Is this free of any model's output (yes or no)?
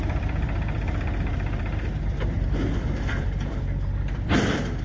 no